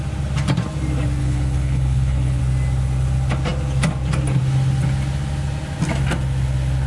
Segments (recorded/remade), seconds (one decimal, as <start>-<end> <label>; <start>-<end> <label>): 0.0-1.2 recorded; 1.2-2.4 remade; 2.4-6.9 recorded